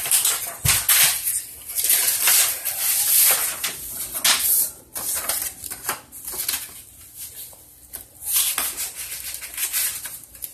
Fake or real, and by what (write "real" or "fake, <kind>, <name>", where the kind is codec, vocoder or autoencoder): real